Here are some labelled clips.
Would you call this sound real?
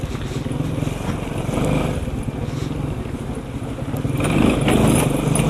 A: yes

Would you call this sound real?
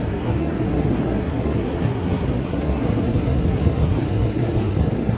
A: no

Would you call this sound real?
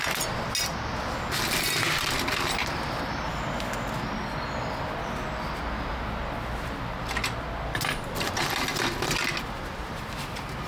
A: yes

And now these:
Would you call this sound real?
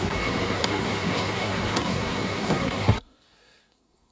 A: no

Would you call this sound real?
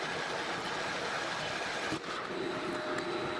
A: yes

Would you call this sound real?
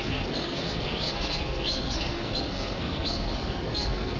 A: no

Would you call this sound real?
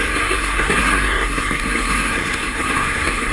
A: no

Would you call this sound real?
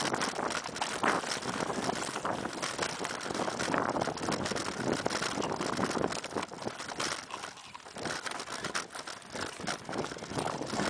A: yes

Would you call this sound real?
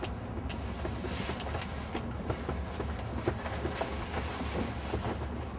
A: yes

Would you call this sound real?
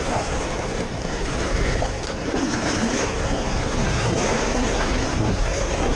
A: no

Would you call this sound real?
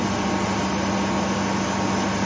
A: yes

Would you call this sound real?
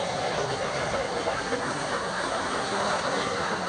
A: no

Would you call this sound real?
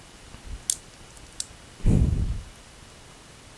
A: yes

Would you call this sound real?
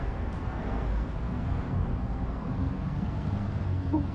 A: no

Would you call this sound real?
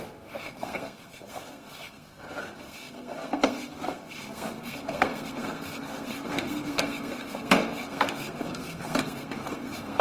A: no